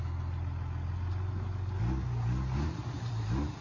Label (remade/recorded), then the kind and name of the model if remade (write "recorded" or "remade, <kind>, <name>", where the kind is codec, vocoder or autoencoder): recorded